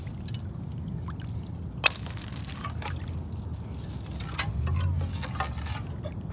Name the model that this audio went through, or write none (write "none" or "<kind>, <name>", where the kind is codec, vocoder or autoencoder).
none